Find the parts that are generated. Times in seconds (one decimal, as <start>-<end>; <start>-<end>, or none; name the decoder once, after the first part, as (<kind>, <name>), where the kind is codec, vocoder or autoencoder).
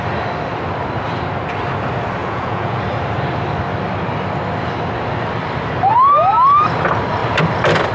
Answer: 2.2-2.8 (vocoder, Vocos)